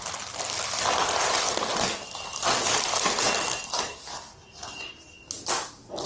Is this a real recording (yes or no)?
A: yes